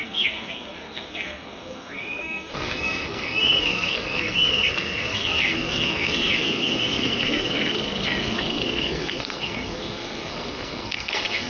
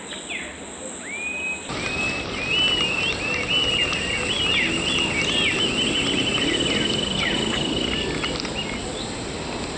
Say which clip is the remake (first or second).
first